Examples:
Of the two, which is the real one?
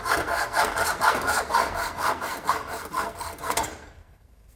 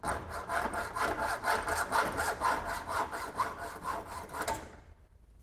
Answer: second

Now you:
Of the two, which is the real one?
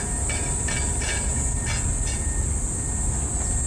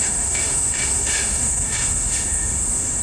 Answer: first